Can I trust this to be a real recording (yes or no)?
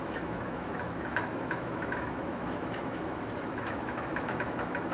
no